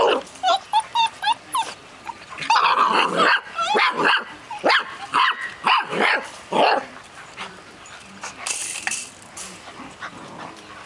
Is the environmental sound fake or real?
fake